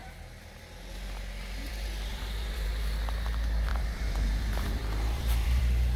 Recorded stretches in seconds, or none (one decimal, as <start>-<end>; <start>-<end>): 0.0-2.1; 2.7-3.7; 5.6-6.0